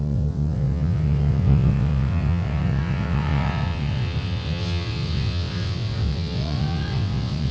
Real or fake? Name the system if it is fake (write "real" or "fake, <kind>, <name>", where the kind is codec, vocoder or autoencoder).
fake, vocoder, WaveNeXt